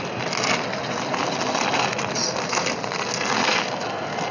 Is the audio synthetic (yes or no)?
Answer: no